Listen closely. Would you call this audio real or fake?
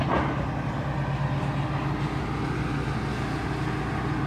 real